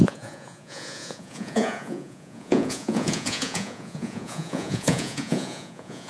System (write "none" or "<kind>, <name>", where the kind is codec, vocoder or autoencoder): vocoder, Vocos